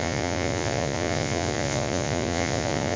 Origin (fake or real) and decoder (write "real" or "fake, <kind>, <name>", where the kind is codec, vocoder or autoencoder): fake, vocoder, Vocos